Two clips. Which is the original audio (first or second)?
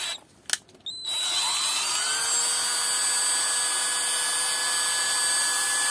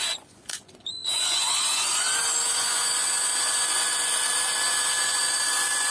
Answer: first